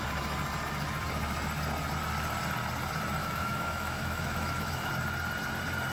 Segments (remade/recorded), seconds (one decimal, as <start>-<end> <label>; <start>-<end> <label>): 0.0-3.2 recorded; 3.2-4.9 remade; 4.9-5.9 recorded